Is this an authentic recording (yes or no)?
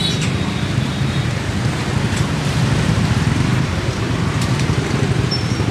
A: no